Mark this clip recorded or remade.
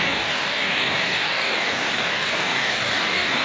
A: remade